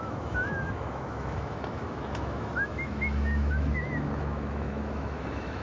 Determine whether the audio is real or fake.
fake